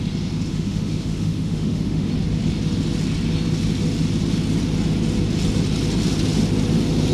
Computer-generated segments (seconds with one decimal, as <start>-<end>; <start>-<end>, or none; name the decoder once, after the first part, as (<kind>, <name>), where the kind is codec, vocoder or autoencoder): 0.5-2.1 (autoencoder, DAC-VAE)